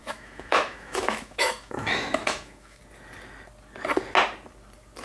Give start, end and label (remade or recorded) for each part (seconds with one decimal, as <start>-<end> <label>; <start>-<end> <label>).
0.0-2.8 remade; 2.8-5.0 recorded